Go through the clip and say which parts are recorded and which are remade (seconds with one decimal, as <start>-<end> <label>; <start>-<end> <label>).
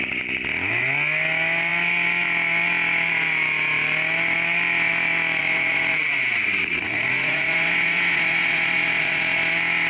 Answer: 0.0-5.4 recorded; 5.4-9.4 remade; 9.4-9.9 recorded